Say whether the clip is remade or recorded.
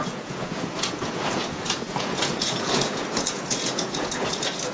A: remade